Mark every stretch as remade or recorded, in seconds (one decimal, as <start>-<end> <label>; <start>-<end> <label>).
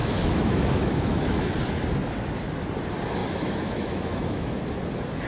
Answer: 0.0-1.5 remade; 1.5-3.2 recorded; 3.2-4.5 remade; 4.5-5.3 recorded